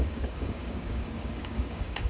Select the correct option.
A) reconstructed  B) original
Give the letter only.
A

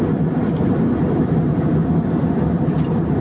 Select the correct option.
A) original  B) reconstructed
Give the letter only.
A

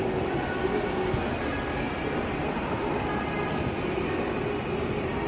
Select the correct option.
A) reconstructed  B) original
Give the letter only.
B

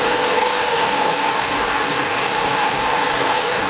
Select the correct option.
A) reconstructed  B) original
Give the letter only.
A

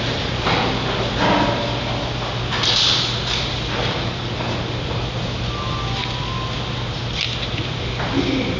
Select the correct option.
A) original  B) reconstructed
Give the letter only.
A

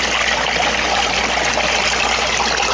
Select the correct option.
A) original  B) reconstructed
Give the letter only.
A